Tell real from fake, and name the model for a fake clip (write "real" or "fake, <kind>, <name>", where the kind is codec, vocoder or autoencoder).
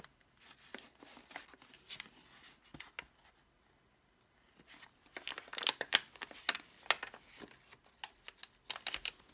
real